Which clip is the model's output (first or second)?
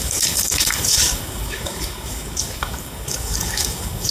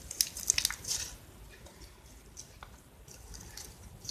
first